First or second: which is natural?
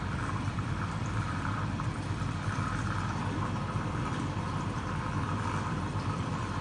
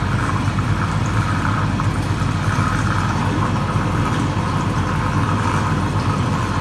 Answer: second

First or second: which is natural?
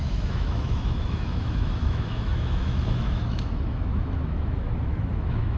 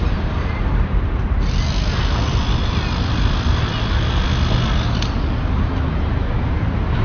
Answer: second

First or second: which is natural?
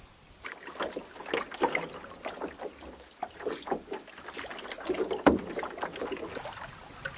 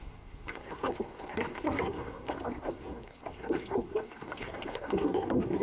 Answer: first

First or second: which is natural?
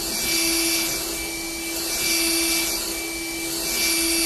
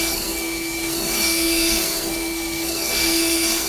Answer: first